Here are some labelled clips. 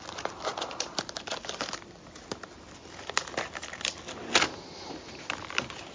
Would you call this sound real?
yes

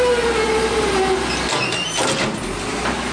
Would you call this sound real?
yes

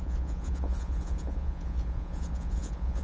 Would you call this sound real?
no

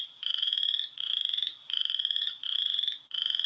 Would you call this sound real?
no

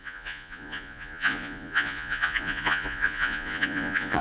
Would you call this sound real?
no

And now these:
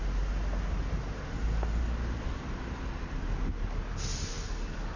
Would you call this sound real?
yes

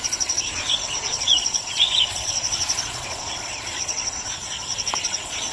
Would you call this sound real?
no